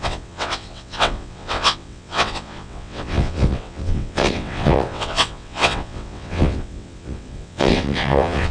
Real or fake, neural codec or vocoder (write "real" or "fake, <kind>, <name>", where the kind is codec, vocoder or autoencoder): fake, vocoder, WaveNeXt